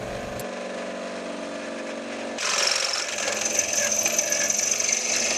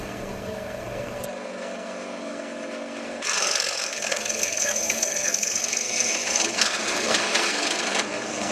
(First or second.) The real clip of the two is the first